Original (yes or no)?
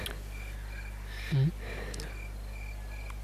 yes